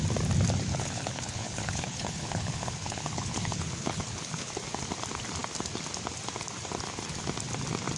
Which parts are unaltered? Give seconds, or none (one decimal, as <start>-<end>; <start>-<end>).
0.0-0.7; 4.5-8.0